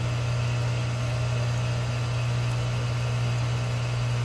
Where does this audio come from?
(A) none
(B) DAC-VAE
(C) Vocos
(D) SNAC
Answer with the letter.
A